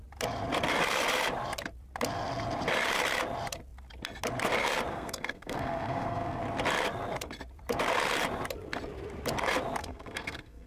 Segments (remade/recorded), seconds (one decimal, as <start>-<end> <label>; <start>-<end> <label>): 0.0-4.9 recorded; 4.9-6.4 remade; 6.4-9.8 recorded; 9.8-10.7 remade